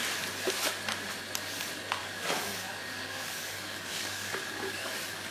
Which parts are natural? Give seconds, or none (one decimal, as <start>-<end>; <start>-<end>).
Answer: 0.0-2.0